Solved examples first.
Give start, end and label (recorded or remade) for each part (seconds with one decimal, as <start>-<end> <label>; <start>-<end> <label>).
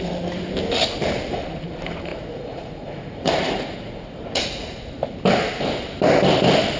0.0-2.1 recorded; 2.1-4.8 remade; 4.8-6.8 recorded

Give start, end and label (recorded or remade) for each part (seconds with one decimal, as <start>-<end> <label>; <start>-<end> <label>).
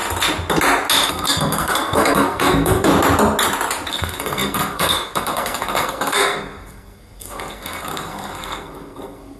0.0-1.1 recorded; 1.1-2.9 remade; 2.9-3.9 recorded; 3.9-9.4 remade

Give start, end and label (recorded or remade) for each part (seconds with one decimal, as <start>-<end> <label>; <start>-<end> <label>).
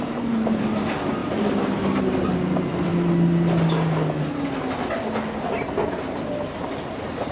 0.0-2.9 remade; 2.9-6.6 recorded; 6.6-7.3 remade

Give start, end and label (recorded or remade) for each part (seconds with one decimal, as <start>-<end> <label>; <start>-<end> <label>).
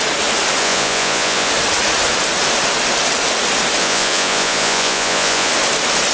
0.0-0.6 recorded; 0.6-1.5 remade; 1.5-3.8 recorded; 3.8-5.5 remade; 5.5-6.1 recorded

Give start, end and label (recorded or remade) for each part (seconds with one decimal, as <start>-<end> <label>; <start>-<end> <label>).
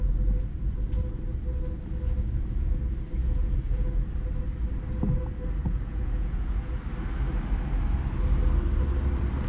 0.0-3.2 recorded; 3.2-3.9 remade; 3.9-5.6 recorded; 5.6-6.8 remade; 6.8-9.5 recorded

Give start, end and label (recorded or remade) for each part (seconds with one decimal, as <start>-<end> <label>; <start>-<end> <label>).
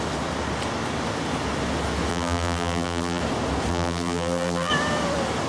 0.0-2.1 recorded; 2.1-3.2 remade; 3.2-3.7 recorded; 3.7-4.7 remade; 4.7-5.5 recorded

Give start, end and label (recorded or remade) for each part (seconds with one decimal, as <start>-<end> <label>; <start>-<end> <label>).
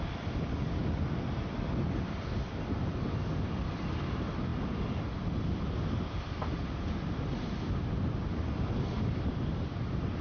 0.0-10.2 recorded